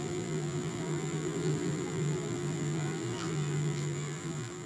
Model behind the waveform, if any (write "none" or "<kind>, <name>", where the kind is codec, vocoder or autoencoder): vocoder, BigVGAN v2